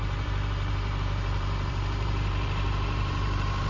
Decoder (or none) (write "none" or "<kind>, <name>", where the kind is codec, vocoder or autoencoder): vocoder, BigVGAN v2